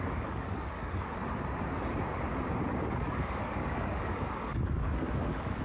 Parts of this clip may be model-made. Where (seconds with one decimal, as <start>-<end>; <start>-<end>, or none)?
0.0-1.2; 2.8-5.6